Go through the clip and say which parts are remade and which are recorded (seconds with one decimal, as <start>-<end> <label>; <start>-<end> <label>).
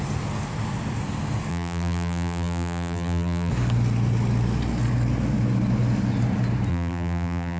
0.0-1.5 recorded; 1.5-3.5 remade; 3.5-6.7 recorded; 6.7-7.6 remade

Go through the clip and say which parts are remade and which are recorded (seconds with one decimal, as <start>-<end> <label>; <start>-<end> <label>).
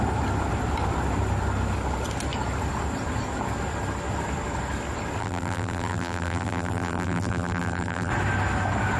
0.0-5.2 recorded; 5.2-8.1 remade; 8.1-9.0 recorded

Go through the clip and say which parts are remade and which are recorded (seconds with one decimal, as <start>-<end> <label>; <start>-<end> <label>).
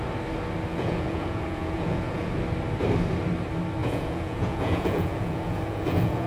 0.0-0.7 recorded; 0.7-2.3 remade; 2.3-3.8 recorded; 3.8-6.3 remade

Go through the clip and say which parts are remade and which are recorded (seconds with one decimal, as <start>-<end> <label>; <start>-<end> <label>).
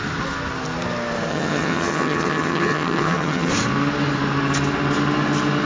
0.0-1.3 recorded; 1.3-3.5 remade; 3.5-5.6 recorded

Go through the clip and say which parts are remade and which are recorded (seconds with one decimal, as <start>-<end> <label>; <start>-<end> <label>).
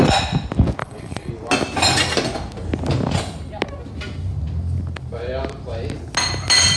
0.0-0.8 recorded; 0.8-1.3 remade; 1.3-6.8 recorded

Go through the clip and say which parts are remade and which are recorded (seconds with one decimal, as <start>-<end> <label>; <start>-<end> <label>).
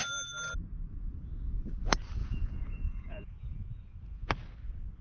0.0-2.2 recorded; 2.2-4.3 remade; 4.3-5.0 recorded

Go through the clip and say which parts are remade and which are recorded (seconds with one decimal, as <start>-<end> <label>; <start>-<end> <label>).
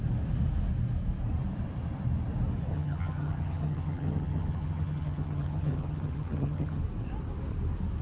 0.0-2.7 recorded; 2.7-6.8 remade; 6.8-8.0 recorded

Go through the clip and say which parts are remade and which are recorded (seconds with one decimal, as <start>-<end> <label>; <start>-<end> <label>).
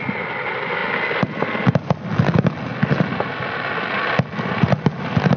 0.0-5.4 recorded